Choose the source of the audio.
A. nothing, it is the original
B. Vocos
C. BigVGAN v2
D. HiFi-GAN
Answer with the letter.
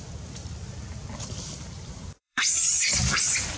C